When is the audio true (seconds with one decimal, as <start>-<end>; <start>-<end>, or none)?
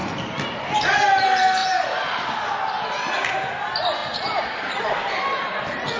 0.0-1.6; 2.3-4.0; 4.8-6.0